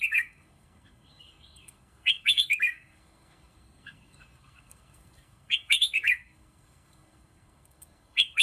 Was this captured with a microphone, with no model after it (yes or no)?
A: no